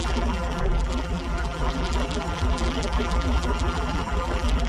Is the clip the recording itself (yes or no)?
no